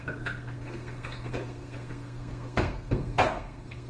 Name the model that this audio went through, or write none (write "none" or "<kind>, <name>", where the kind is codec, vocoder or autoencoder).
codec, SNAC